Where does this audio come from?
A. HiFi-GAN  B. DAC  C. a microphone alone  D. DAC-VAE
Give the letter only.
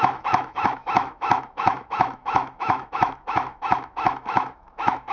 D